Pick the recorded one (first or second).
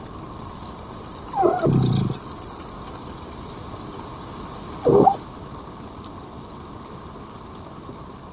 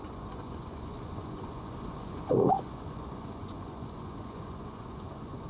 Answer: first